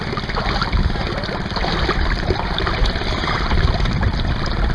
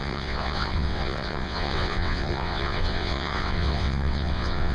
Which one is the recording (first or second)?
first